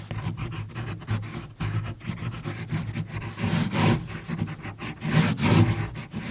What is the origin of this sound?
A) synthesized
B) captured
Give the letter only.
B